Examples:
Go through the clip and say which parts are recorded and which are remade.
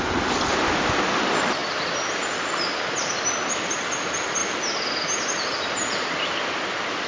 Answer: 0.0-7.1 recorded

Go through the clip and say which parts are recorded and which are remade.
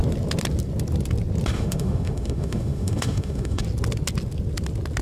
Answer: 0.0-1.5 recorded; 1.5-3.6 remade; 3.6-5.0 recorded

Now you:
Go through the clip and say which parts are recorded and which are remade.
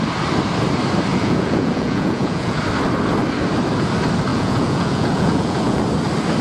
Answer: 0.0-1.1 recorded; 1.1-2.6 remade; 2.6-4.3 recorded; 4.3-5.8 remade; 5.8-6.4 recorded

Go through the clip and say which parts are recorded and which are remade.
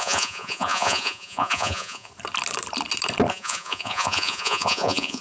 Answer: 0.0-2.1 remade; 2.1-3.3 recorded; 3.3-5.2 remade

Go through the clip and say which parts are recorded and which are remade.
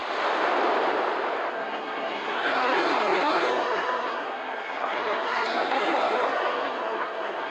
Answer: 0.0-1.5 recorded; 1.5-7.5 remade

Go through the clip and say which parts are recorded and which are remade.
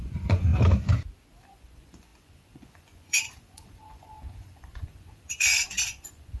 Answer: 0.0-0.5 remade; 0.5-1.5 recorded; 1.5-6.4 remade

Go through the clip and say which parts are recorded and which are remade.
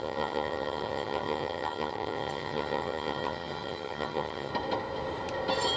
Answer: 0.0-4.5 remade; 4.5-5.8 recorded